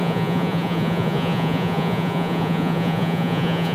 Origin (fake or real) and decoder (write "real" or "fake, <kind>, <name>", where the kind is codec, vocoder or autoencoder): fake, vocoder, Vocos